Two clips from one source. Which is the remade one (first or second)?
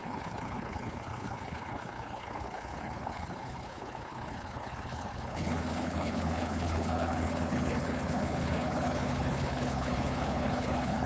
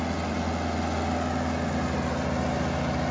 first